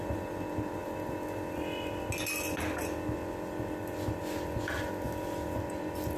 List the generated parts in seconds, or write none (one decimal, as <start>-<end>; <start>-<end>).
none